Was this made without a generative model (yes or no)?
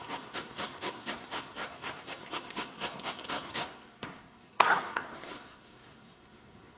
no